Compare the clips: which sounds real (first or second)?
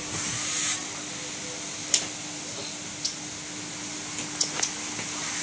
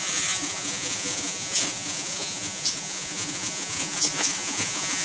first